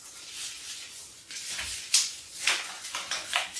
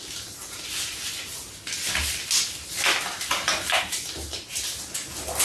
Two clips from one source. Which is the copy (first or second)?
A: first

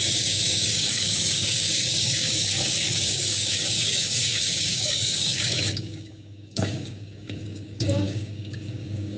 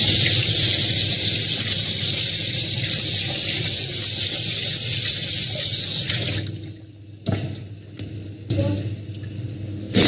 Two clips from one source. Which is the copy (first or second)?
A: first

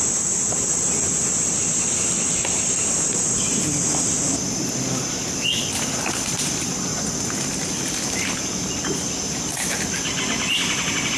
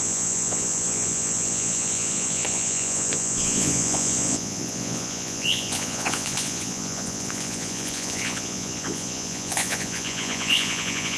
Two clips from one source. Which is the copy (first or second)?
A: second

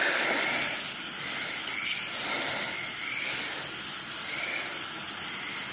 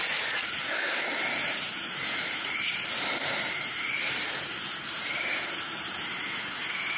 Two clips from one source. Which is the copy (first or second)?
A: second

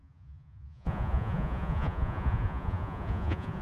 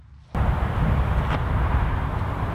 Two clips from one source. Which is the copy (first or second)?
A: first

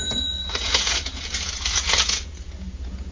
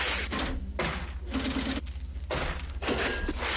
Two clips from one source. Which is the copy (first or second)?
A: first